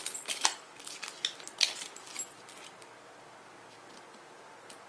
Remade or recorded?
recorded